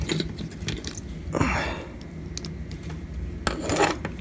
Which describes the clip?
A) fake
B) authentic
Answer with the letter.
B